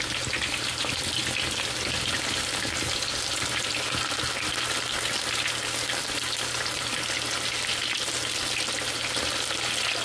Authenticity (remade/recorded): recorded